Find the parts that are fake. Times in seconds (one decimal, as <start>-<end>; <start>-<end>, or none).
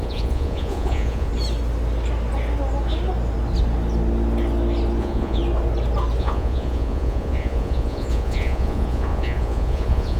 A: 0.0-1.3; 5.0-5.4; 6.2-10.2